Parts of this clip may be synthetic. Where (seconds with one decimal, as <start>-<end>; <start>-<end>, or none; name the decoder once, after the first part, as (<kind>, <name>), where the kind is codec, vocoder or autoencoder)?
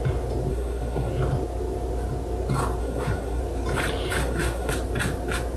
0.5-1.1 (codec, SNAC); 2.8-3.4; 4.2-4.7